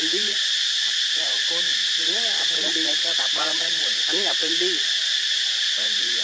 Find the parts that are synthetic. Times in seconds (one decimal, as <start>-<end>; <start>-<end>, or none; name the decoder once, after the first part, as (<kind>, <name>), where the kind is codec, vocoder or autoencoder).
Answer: 0.0-6.2 (vocoder, Vocos)